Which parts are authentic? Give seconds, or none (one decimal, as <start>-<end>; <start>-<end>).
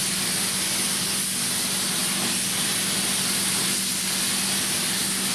0.0-5.3